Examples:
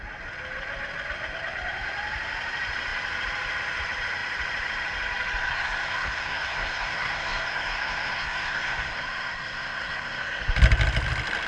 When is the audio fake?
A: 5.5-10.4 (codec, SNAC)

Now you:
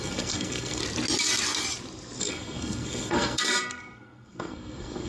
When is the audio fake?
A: 0.0-0.8 (codec, SNAC); 2.2-5.1

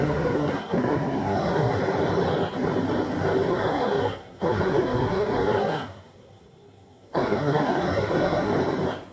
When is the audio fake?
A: 0.0-1.8 (codec, SNAC); 3.5-8.5